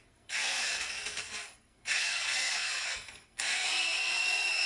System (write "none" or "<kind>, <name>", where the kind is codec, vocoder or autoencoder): codec, SNAC